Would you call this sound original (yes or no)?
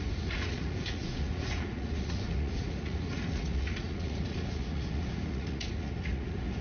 no